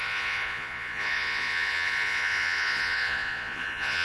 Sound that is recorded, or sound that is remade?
remade